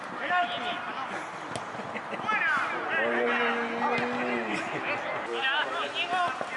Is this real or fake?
real